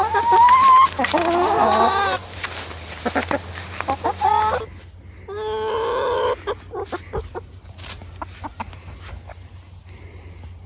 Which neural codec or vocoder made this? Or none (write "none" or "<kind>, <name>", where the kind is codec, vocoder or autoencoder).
none